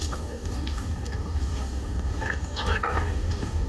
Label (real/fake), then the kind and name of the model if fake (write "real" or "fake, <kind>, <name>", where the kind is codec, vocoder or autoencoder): fake, codec, DAC